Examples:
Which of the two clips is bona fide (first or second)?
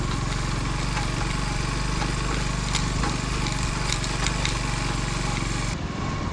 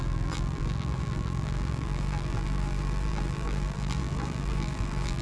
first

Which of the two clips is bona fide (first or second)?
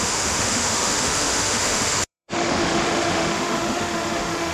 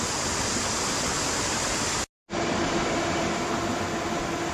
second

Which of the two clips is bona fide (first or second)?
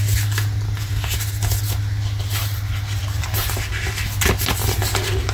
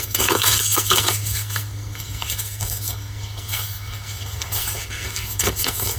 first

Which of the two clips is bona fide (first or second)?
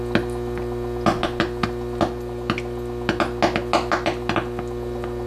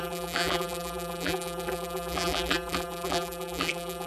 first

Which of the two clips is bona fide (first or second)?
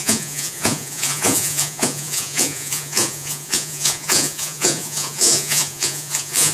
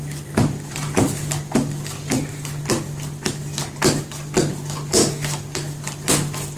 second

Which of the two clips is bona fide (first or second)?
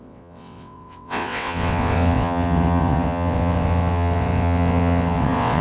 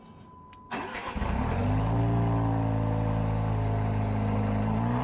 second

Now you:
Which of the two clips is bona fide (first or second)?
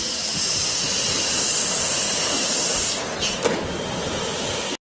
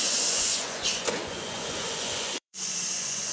first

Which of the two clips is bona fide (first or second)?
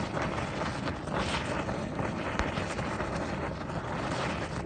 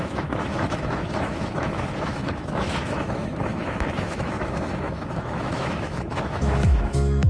first